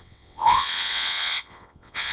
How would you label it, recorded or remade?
remade